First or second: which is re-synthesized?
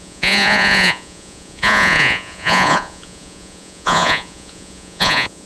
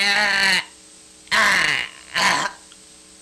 first